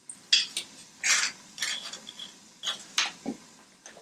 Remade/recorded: recorded